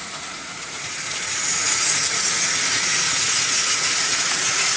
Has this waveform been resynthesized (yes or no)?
yes